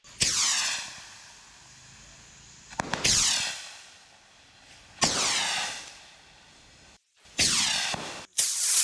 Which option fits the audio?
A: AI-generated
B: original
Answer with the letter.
B